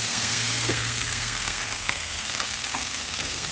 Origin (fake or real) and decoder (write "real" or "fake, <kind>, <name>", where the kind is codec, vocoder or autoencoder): fake, codec, SNAC